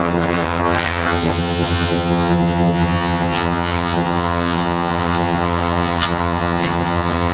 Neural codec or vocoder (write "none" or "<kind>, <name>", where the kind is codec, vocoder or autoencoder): vocoder, HiFi-GAN